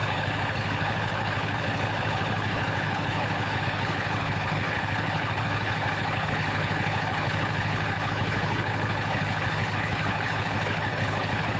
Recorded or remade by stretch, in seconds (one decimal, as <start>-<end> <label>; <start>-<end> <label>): 0.0-11.6 remade